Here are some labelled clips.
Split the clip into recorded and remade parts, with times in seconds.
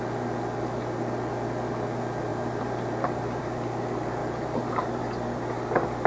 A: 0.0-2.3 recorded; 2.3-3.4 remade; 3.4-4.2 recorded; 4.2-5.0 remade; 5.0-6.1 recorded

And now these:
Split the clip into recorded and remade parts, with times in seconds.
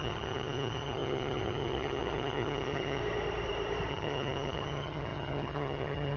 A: 0.0-3.0 remade; 3.0-3.9 recorded; 3.9-6.2 remade